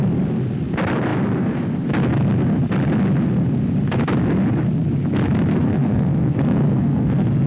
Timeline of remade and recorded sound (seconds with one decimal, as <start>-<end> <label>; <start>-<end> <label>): 0.0-5.5 recorded; 5.5-7.5 remade

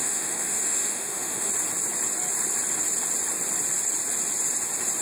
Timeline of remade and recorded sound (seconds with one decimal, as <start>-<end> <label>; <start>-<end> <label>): 0.0-1.5 remade; 1.5-5.0 recorded

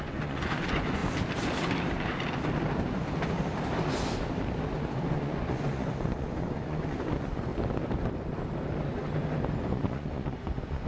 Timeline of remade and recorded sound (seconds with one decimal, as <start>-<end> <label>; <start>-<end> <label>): 0.0-1.0 remade; 1.0-5.1 recorded; 5.1-7.5 remade; 7.5-9.6 recorded; 9.6-10.9 remade

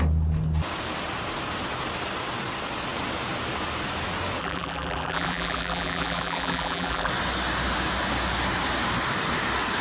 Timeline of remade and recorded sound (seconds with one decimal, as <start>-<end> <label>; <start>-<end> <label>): 0.0-4.4 recorded; 4.4-7.1 remade; 7.1-9.8 recorded

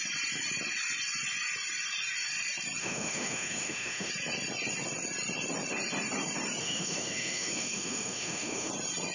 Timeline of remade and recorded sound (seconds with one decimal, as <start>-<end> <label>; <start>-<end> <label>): 0.0-2.8 recorded; 2.8-4.1 remade; 4.1-6.6 recorded; 6.6-8.7 remade; 8.7-9.1 recorded

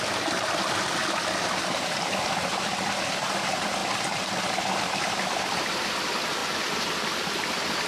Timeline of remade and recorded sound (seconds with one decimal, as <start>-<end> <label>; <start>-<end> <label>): 0.0-1.0 remade; 1.0-1.6 recorded; 1.6-3.8 remade; 3.8-4.4 recorded; 4.4-6.4 remade; 6.4-7.2 recorded; 7.2-7.9 remade

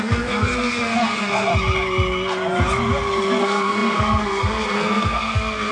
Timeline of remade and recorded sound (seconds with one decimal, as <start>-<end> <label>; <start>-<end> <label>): 0.0-1.5 remade; 1.5-3.4 recorded; 3.4-5.7 remade